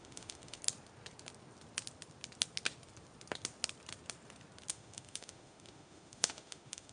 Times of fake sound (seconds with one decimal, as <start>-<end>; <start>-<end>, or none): 0.0-0.6; 4.7-6.9

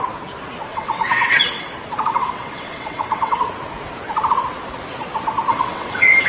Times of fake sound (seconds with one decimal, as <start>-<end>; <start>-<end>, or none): 0.7-1.7; 2.1-3.4; 5.5-6.3

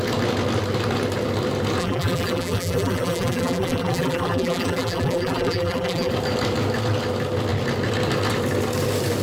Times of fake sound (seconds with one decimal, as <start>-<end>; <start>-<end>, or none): 1.8-6.1

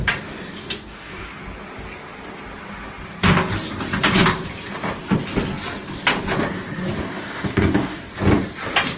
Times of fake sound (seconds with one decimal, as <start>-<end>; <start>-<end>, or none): 0.6-1.3; 7.0-8.1